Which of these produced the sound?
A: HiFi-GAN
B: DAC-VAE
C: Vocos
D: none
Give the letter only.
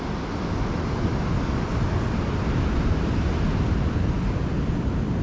D